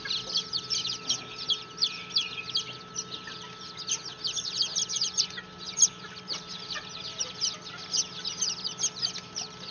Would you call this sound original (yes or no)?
yes